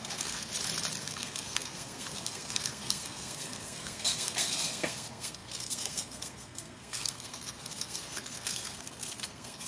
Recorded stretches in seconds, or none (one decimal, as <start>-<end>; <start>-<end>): 0.5-1.0